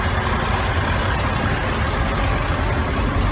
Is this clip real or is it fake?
real